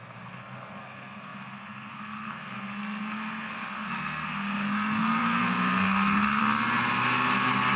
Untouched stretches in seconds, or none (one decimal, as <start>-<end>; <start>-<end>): 6.4-7.8